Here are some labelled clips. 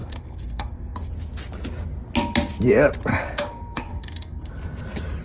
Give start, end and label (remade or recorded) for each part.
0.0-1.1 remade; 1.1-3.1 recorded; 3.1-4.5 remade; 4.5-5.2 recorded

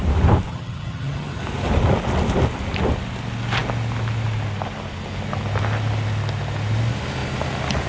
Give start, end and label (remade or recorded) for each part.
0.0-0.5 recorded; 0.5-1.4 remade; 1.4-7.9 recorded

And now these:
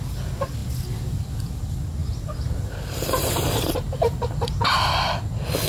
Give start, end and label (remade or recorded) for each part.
0.0-2.0 recorded; 2.0-4.6 remade; 4.6-5.7 recorded

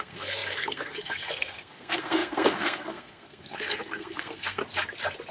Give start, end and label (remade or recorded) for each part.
0.0-4.6 remade; 4.6-5.3 recorded

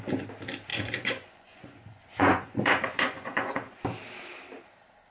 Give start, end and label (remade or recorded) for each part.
0.0-0.7 recorded; 0.7-3.8 remade; 3.8-5.1 recorded

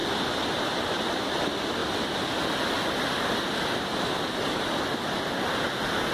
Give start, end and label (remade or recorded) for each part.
0.0-6.1 recorded